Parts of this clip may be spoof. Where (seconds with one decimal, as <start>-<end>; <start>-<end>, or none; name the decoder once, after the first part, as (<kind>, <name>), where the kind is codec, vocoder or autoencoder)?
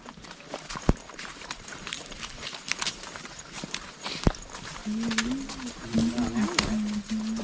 0.0-4.8 (vocoder, BigVGAN v2); 5.6-6.0